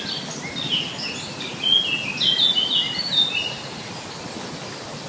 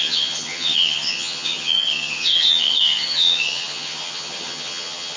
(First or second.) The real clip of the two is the first